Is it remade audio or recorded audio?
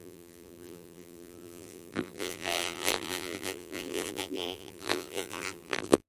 remade